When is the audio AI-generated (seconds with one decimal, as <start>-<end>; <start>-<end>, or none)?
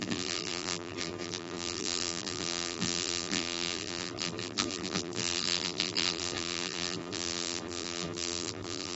0.0-9.0